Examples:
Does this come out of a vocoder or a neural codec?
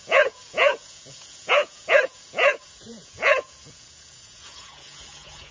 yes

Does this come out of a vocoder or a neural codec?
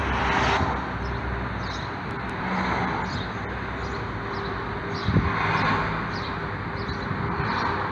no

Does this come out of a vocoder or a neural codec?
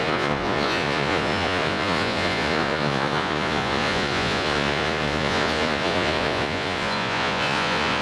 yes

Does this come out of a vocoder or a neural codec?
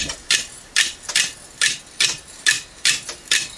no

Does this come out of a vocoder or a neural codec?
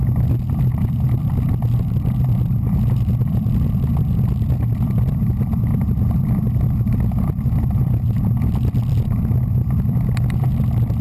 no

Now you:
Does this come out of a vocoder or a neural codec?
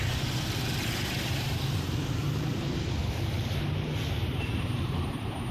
yes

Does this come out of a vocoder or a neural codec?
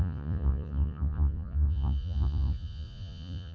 yes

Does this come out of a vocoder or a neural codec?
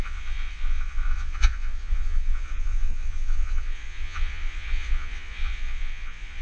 yes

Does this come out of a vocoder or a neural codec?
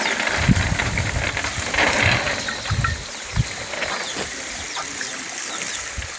no